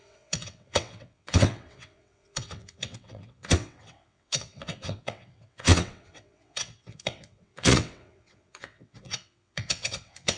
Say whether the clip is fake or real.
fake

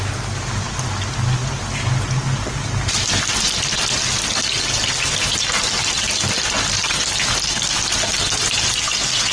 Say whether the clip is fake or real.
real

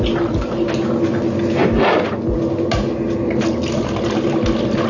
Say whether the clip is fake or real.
real